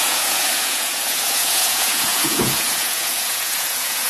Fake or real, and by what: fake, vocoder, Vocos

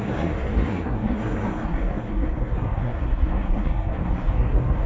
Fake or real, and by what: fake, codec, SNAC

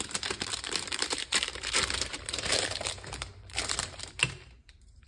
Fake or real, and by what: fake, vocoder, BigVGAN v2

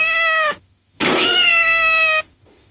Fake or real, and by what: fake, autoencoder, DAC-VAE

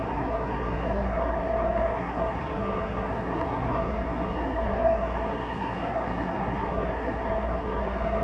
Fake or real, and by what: fake, codec, SNAC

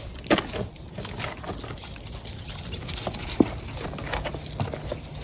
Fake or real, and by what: real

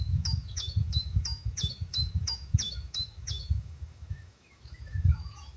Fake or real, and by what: fake, autoencoder, DAC-VAE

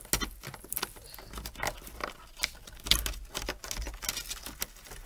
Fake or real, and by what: real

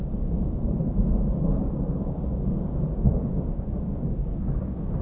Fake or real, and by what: fake, codec, DAC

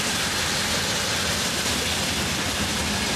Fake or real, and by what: real